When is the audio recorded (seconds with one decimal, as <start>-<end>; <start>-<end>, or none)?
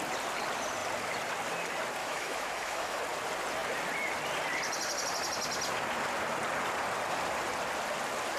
0.0-2.0; 3.0-8.4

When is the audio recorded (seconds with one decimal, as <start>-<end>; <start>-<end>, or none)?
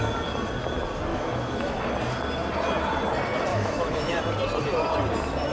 0.0-1.1; 1.9-3.5; 4.2-5.5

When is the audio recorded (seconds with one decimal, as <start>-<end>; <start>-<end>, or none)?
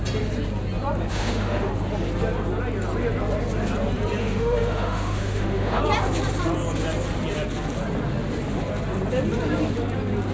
0.0-1.1; 1.7-4.2; 5.8-10.3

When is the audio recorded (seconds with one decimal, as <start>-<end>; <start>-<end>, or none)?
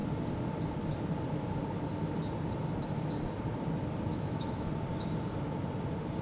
0.0-4.1; 4.7-6.2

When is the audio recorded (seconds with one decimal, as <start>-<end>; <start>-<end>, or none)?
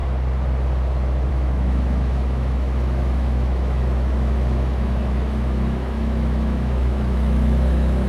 0.0-1.3